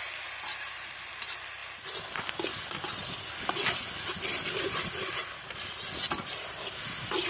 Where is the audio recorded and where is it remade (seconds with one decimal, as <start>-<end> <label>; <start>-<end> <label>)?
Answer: 0.0-7.3 recorded